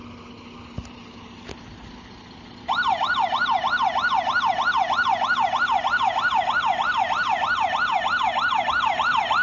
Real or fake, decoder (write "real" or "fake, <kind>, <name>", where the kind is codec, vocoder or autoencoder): real